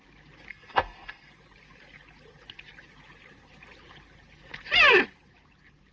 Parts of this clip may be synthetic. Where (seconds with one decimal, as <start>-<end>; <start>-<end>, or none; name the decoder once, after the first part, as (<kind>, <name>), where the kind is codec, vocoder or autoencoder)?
0.5-1.3 (codec, SNAC)